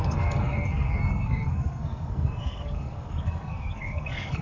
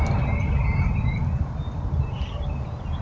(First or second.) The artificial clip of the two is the first